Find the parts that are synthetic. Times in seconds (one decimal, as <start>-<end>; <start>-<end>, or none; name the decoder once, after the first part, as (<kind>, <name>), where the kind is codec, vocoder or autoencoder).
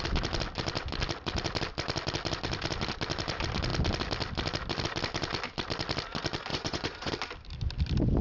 6.5-7.1 (vocoder, Vocos)